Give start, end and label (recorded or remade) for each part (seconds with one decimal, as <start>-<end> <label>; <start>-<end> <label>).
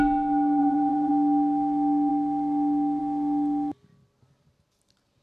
0.0-0.6 recorded; 0.6-1.1 remade; 1.1-5.2 recorded